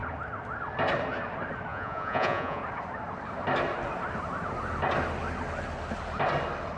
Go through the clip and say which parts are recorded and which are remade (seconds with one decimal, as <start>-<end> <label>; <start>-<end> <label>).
0.0-1.7 recorded; 1.7-2.6 remade; 2.6-6.8 recorded